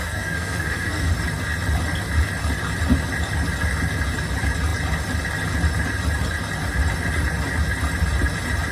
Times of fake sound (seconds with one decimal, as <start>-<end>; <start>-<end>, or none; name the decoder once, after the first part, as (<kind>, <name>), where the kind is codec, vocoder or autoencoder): 0.0-1.1 (codec, SNAC)